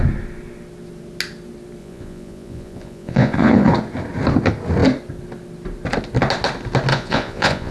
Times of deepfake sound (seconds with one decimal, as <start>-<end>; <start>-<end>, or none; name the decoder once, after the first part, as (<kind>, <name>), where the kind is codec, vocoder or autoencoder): 1.8-3.7 (vocoder, Vocos); 6.9-7.7